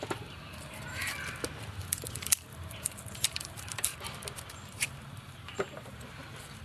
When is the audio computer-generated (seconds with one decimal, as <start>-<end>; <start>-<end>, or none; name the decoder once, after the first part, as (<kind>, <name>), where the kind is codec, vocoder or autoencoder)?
0.0-1.1 (vocoder, BigVGAN v2); 1.8-3.9; 4.7-6.6